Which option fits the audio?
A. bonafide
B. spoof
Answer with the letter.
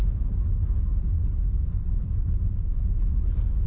A